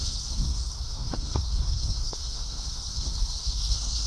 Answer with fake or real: fake